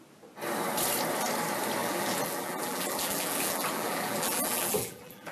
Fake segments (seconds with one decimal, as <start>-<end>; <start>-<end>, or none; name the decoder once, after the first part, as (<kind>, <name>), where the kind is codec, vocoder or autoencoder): 1.8-5.3 (vocoder, BigVGAN v2)